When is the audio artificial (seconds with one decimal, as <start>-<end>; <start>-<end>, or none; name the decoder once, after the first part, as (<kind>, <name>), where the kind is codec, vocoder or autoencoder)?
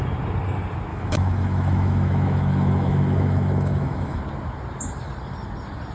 0.9-4.2 (autoencoder, DAC-VAE)